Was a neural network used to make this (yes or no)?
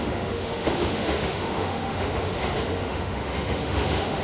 yes